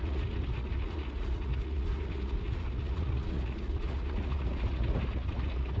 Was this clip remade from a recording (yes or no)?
yes